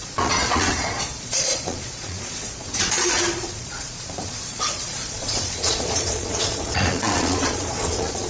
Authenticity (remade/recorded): remade